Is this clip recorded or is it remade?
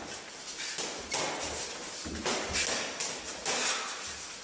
recorded